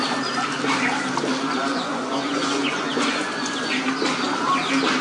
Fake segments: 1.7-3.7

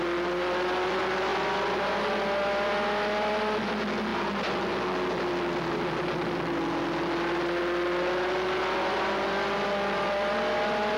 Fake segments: none

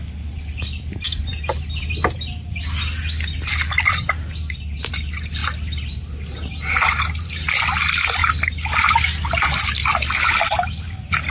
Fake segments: 0.0-1.3; 4.9-9.9

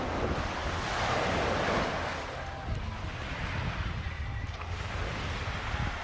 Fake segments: none

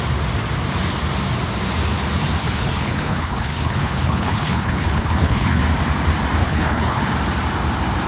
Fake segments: 2.4-5.6; 6.4-7.0